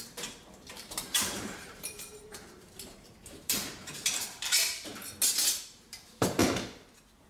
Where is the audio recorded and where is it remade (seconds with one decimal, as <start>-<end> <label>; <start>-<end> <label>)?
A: 0.0-4.9 remade; 4.9-5.8 recorded; 5.8-6.4 remade; 6.4-7.3 recorded